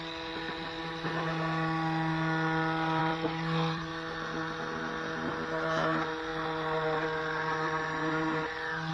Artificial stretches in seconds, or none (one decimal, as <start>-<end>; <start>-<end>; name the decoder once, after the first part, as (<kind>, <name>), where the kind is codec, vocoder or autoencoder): 3.0-3.9 (vocoder, BigVGAN v2)